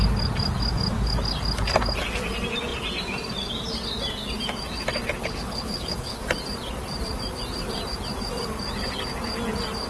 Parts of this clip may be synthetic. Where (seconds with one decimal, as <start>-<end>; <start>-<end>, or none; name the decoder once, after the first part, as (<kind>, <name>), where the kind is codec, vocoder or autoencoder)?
5.2-6.2 (codec, HILCodec)